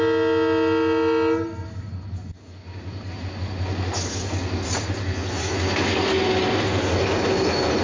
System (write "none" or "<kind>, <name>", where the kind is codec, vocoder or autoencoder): none